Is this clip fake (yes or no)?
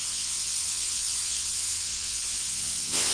yes